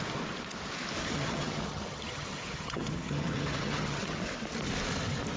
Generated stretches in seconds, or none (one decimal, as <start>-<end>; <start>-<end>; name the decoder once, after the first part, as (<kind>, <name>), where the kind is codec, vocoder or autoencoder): 1.0-4.2 (vocoder, HiFi-GAN)